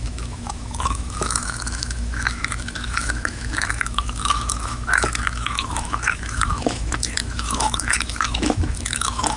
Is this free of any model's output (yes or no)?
no